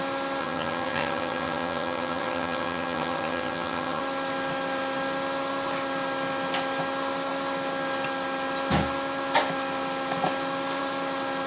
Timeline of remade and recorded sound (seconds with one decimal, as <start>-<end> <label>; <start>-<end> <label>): 0.0-0.4 recorded; 0.4-4.0 remade; 4.0-11.5 recorded